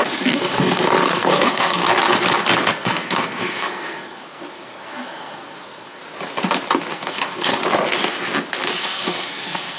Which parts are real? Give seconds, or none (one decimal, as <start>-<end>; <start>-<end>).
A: 1.8-2.7; 6.0-6.9; 7.6-8.8